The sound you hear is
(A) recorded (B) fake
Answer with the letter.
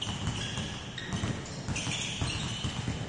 A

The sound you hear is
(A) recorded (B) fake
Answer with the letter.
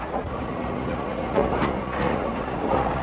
B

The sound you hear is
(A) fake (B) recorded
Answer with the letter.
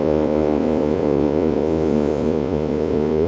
A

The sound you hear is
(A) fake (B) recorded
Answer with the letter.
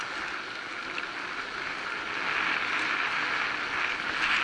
B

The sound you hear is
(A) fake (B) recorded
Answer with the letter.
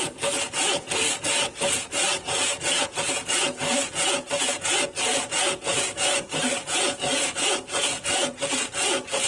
A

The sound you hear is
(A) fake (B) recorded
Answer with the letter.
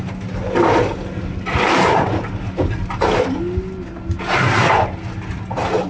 B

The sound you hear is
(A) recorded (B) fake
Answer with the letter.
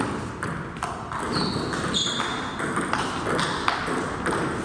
A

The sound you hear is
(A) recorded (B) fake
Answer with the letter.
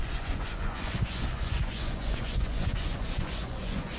B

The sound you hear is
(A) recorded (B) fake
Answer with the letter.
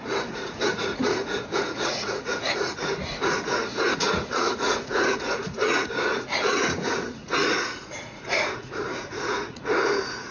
B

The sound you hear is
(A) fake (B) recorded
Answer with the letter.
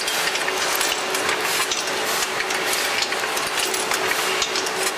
B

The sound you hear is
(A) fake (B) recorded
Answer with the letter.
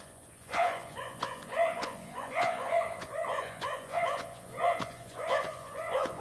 A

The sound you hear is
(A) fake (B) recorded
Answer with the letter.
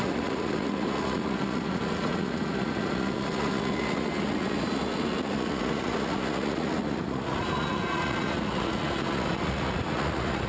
A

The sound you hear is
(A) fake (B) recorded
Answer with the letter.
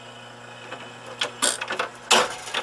B